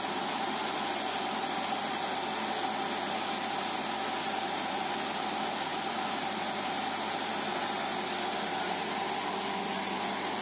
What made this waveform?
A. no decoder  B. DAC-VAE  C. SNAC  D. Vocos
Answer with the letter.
A